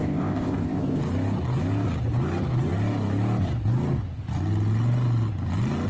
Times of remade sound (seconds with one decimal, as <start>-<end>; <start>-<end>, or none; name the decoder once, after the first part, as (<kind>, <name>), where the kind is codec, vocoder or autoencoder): 0.0-1.0 (codec, ZipCodec)